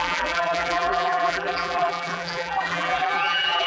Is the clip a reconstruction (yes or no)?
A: yes